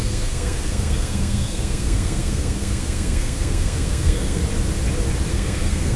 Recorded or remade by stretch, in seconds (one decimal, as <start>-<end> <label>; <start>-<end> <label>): 0.0-4.4 remade; 4.4-5.3 recorded; 5.3-6.0 remade